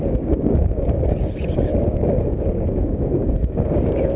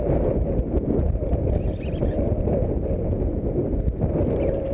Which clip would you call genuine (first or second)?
second